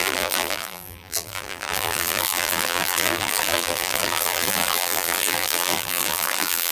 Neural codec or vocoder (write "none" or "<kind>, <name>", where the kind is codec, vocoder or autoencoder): vocoder, BigVGAN v2